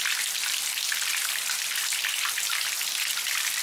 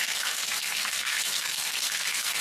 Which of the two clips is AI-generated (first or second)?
second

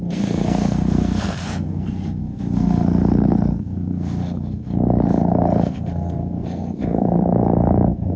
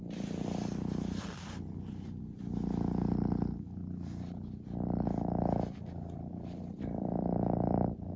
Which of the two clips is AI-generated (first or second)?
first